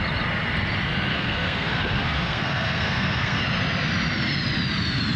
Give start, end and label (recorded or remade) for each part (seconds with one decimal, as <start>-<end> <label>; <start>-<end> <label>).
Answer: 0.0-1.1 recorded; 1.1-3.4 remade; 3.4-5.2 recorded